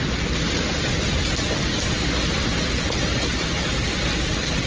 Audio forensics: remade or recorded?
recorded